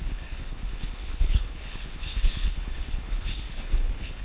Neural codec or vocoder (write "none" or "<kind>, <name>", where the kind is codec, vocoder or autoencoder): codec, HILCodec